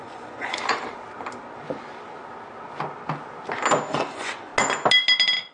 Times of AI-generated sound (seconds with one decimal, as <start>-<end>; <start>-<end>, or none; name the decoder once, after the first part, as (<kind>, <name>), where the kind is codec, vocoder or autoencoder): 0.0-0.6 (vocoder, Vocos); 3.9-4.5